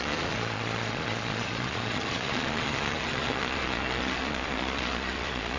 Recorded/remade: remade